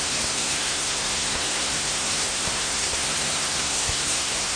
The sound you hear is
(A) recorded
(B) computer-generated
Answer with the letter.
B